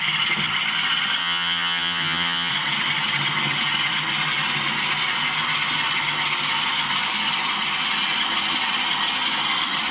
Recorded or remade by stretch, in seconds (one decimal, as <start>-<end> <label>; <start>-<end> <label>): 0.0-1.2 recorded; 1.2-2.5 remade; 2.5-9.9 recorded